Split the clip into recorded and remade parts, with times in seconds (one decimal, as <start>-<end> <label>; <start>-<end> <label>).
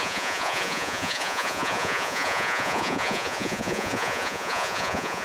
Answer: 0.0-5.2 remade